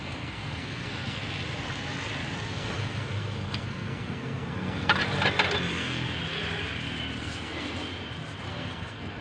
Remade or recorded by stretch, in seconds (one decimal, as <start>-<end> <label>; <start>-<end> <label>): 0.0-1.2 remade; 1.2-2.5 recorded; 2.5-4.9 remade; 4.9-5.7 recorded; 5.7-6.2 remade; 6.2-7.2 recorded; 7.2-7.8 remade; 7.8-8.5 recorded; 8.5-9.2 remade